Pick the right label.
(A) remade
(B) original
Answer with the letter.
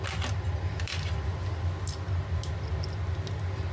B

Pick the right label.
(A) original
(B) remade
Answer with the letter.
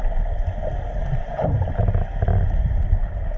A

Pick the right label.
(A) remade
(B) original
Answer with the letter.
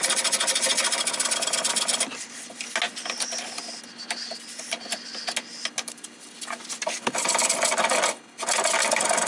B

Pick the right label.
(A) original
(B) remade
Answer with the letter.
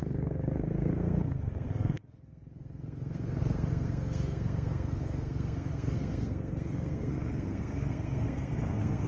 B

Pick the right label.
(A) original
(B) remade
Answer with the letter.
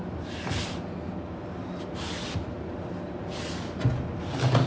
A